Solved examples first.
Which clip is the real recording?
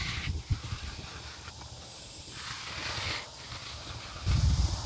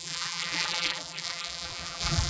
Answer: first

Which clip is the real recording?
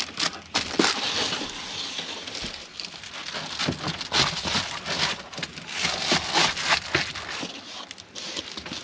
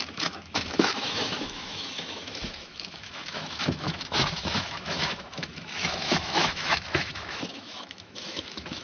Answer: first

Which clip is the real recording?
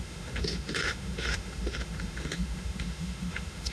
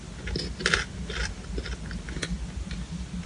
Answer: second